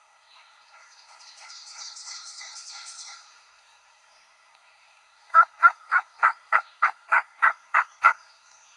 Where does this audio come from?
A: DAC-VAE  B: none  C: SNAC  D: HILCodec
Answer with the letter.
C